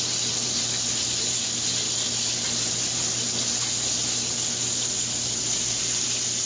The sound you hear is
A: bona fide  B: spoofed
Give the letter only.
A